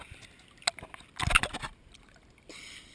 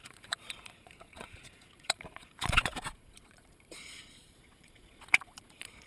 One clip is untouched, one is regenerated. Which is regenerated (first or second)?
second